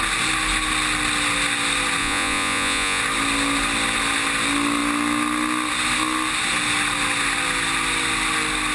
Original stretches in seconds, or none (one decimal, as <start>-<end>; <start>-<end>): 0.0-2.0; 3.0-8.7